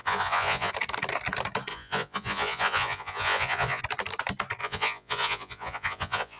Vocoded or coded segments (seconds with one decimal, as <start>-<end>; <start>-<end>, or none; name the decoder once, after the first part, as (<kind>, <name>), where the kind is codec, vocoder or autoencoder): 0.0-0.7 (vocoder, Vocos); 1.7-3.8; 4.6-6.4